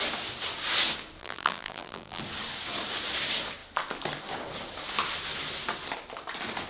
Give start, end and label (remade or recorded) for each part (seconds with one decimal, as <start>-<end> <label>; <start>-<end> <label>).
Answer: 0.0-1.2 recorded; 1.2-2.2 remade; 2.2-6.7 recorded